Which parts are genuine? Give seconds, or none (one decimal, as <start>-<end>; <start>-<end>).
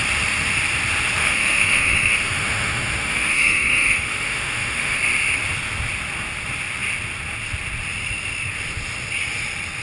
0.0-1.2; 5.0-9.8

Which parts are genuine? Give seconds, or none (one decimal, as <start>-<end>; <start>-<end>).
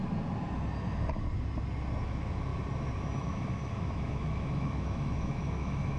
0.0-2.0; 2.5-3.2